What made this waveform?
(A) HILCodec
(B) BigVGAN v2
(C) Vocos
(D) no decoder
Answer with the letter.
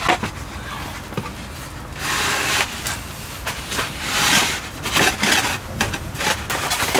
D